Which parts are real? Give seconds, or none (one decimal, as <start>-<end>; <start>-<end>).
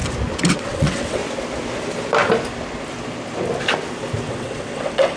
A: 0.0-0.5; 1.2-4.3